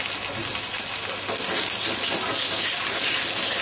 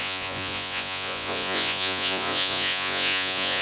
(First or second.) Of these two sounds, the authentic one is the first